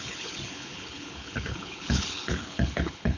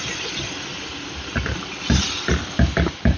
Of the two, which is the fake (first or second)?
first